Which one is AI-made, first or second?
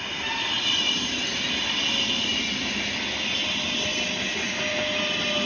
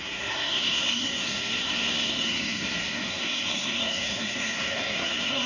second